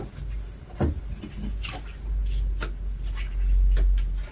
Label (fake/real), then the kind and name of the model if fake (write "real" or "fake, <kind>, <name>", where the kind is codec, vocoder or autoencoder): real